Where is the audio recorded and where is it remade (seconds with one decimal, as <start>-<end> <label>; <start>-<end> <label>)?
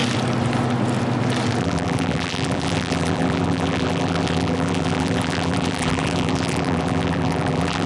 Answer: 0.0-1.6 recorded; 1.6-7.9 remade